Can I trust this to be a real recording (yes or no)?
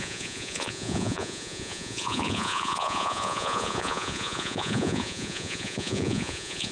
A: no